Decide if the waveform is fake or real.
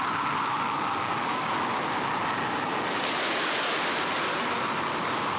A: real